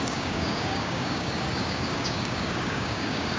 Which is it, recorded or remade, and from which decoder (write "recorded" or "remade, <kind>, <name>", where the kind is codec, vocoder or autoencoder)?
remade, codec, DAC